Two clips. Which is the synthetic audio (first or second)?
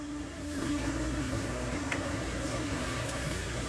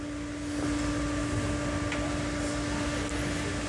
first